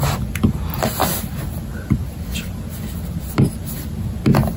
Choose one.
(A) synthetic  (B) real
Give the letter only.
B